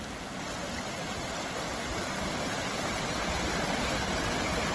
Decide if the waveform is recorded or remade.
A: recorded